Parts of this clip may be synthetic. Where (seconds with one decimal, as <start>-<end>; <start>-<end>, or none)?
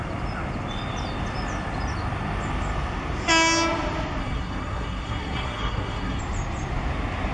4.2-6.2